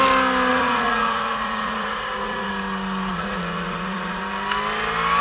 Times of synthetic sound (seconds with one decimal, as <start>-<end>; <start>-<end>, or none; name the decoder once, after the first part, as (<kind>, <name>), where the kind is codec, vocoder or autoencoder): 0.5-2.5 (vocoder, Vocos); 3.1-4.2